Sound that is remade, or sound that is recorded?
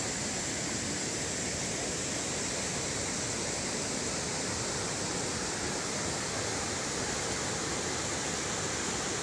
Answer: recorded